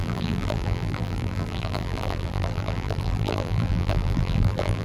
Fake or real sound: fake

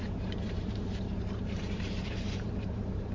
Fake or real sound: fake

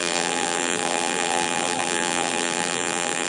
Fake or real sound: fake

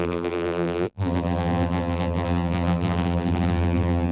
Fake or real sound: fake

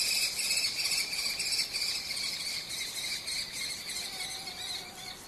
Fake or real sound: real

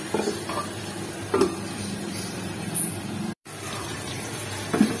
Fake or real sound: fake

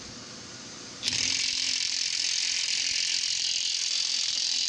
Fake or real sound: fake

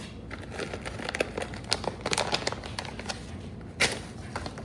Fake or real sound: real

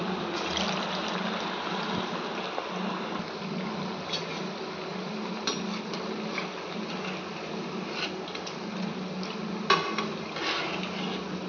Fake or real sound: real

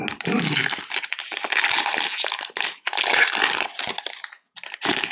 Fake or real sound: real